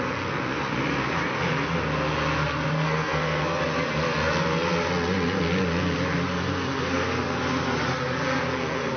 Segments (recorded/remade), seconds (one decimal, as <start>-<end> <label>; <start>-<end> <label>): 0.0-2.7 recorded; 2.7-3.6 remade; 3.6-9.0 recorded